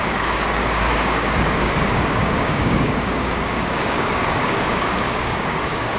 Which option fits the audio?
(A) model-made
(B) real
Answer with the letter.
A